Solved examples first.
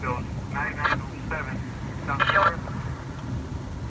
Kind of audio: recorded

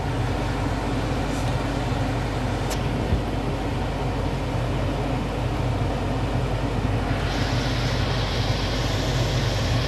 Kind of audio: recorded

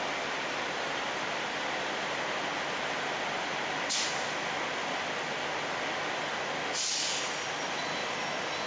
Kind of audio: recorded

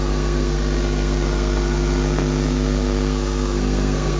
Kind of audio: remade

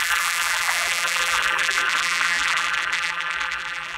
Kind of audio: remade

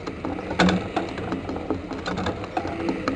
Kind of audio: remade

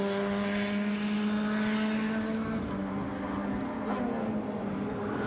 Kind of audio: recorded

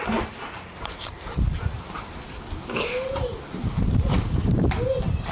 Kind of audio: remade